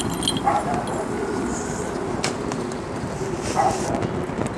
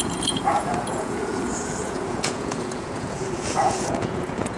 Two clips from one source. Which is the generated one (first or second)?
second